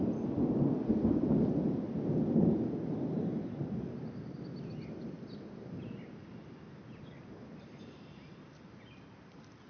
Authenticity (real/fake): real